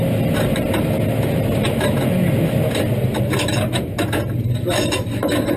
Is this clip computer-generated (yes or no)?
no